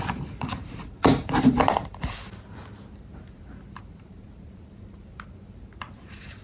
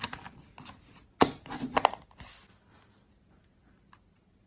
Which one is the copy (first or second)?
first